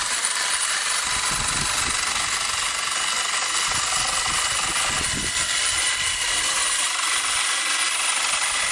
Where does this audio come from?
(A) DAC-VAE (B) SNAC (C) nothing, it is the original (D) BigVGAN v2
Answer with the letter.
C